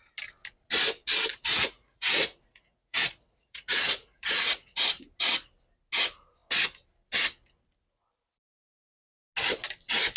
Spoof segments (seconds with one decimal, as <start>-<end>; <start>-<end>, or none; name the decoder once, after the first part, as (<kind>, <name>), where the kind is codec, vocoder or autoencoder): 1.3-4.9 (vocoder, Vocos)